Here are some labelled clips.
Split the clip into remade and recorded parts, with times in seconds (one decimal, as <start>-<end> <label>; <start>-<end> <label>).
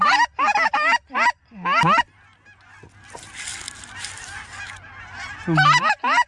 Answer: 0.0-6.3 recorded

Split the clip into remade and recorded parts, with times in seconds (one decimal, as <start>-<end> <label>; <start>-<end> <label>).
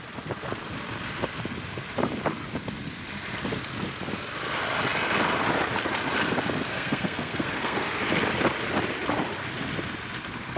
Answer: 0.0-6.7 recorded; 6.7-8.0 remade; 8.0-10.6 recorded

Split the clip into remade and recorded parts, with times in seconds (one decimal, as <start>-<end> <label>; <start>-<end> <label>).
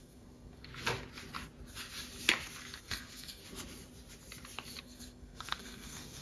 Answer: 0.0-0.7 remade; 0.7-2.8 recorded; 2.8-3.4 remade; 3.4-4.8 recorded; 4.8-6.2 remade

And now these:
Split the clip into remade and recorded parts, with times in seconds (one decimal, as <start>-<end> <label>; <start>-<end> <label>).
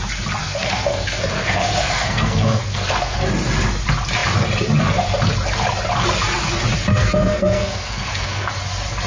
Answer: 0.0-0.4 recorded; 0.4-3.3 remade; 3.3-6.9 recorded; 6.9-8.5 remade; 8.5-9.1 recorded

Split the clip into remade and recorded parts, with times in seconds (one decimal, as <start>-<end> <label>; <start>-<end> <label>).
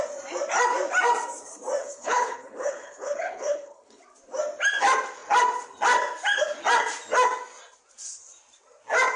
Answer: 0.0-1.8 recorded; 1.8-4.0 remade; 4.0-9.2 recorded